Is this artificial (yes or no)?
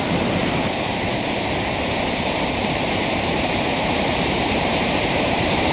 yes